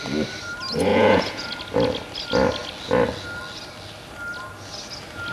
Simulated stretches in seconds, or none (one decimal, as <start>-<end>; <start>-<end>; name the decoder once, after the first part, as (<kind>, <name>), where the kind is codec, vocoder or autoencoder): 0.9-1.6 (vocoder, Vocos)